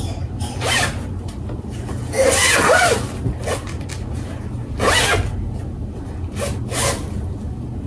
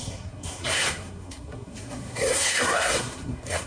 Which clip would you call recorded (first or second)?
first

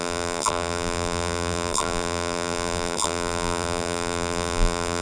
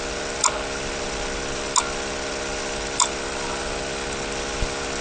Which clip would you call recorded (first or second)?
second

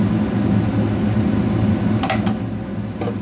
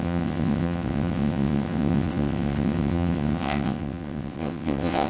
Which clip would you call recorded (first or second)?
first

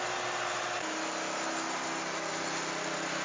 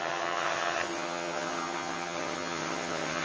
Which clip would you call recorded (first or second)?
first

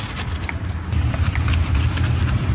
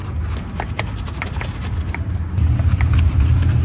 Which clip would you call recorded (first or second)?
second